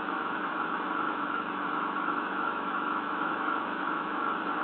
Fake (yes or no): yes